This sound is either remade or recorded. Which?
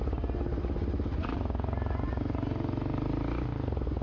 recorded